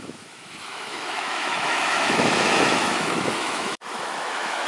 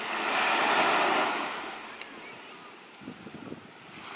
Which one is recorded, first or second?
second